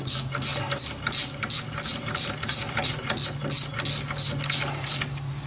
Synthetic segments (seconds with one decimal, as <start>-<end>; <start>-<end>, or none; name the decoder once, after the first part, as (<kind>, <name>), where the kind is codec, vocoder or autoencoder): 1.9-2.9 (vocoder, BigVGAN v2)